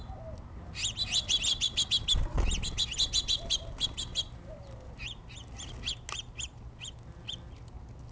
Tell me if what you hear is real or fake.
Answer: real